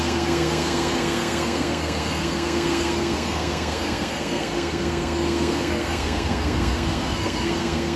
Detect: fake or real fake